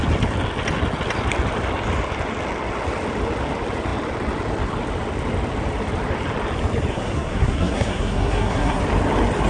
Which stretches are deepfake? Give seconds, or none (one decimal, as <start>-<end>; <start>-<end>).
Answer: 6.9-8.8